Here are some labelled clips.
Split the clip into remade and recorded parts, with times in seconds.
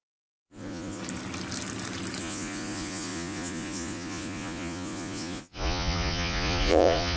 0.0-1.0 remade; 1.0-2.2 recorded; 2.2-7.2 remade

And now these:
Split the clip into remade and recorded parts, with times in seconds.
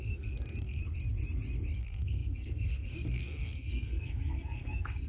0.0-0.8 remade; 0.8-1.8 recorded; 1.8-5.1 remade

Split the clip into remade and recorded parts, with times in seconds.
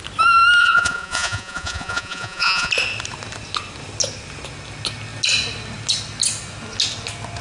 0.0-0.6 recorded; 0.6-2.7 remade; 2.7-7.4 recorded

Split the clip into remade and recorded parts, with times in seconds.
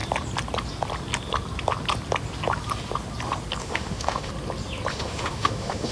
0.0-3.6 recorded; 3.6-4.3 remade; 4.3-4.9 recorded; 4.9-5.9 remade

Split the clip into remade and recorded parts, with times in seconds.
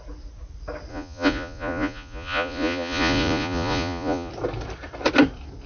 0.0-0.9 recorded; 0.9-4.3 remade; 4.3-5.7 recorded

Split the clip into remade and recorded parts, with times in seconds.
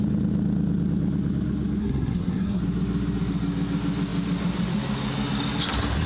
0.0-1.8 recorded; 1.8-2.6 remade; 2.6-6.1 recorded